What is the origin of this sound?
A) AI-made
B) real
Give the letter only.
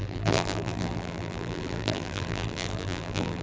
A